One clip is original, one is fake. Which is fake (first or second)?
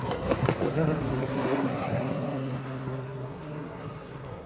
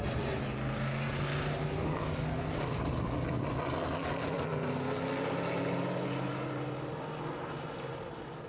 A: first